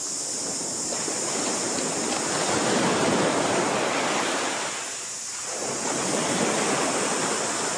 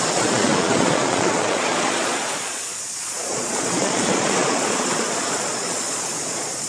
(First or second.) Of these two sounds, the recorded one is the first